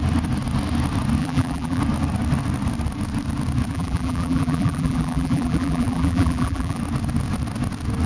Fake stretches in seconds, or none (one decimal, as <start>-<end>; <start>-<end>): 1.2-1.8; 3.7-6.8